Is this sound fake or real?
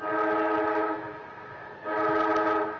real